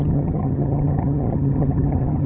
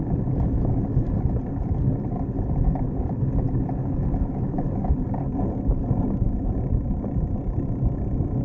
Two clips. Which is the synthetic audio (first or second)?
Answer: first